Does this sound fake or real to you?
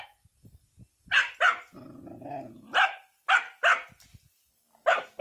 real